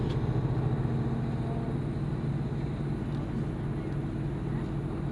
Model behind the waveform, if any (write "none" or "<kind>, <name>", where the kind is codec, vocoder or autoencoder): none